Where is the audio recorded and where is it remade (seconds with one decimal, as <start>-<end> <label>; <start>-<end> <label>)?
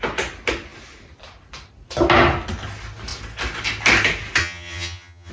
0.0-4.4 recorded; 4.4-5.3 remade